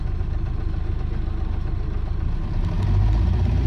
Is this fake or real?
real